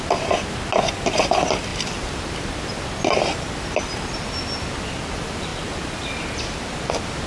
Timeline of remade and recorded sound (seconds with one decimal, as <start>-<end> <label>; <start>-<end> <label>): 0.0-7.3 recorded